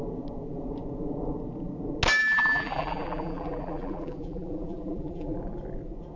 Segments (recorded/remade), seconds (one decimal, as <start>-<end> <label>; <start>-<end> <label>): 0.0-2.2 recorded; 2.2-5.4 remade; 5.4-6.2 recorded